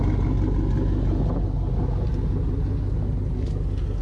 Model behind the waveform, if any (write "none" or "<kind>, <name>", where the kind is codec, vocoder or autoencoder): none